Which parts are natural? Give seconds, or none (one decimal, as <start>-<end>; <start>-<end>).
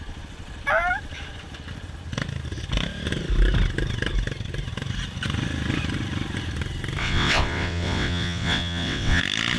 0.0-7.0; 9.2-9.6